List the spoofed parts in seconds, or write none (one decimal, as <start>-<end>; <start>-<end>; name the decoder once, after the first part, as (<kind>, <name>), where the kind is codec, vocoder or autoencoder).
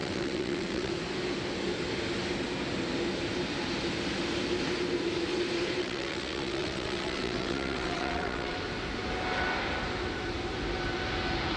0.0-0.9 (vocoder, WaveNeXt); 5.8-8.6